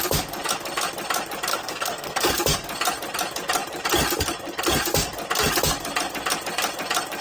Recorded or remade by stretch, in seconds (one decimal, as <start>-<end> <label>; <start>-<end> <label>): 0.0-1.5 recorded; 1.5-2.3 remade; 2.3-7.2 recorded